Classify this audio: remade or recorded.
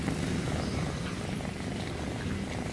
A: recorded